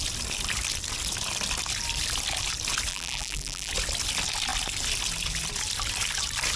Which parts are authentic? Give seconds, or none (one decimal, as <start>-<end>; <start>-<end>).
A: 0.0-2.9; 3.7-6.6

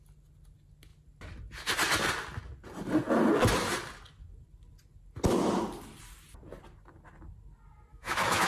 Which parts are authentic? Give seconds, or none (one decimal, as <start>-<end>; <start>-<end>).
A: 0.0-7.9

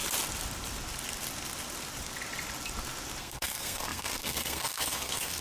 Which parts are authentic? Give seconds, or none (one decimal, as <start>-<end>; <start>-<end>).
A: 0.0-3.2

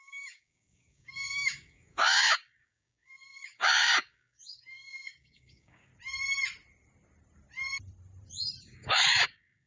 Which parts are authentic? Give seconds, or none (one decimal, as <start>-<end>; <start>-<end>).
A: 5.9-8.6